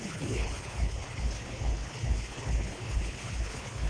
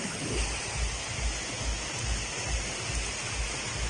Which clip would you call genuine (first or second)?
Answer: second